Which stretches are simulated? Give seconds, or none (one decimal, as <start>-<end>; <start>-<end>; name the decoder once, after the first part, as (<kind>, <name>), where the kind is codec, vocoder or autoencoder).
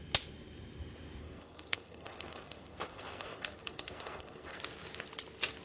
1.2-4.6 (codec, SNAC)